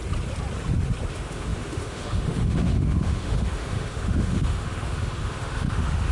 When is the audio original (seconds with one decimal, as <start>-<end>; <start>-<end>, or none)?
0.0-1.1